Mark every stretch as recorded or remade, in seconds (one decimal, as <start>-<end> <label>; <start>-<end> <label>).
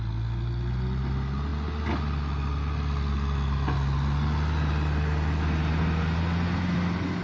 0.0-7.2 recorded